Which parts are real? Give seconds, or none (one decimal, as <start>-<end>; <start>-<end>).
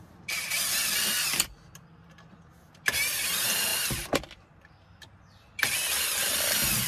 0.0-6.9